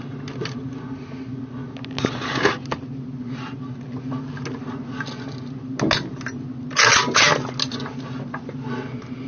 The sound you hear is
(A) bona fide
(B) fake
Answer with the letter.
A